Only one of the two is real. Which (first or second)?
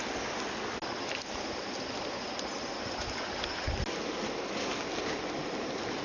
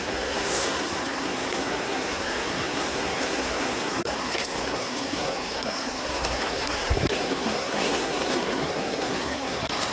first